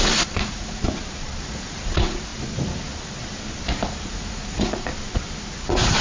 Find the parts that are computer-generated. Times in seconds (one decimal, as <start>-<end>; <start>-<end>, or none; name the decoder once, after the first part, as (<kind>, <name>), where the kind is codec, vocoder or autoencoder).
0.0-0.8 (vocoder, Vocos); 1.4-2.3; 4.1-4.9; 5.6-6.0